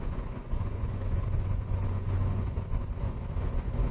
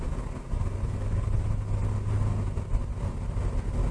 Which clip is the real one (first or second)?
second